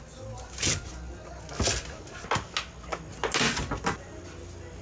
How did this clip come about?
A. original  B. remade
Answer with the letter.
A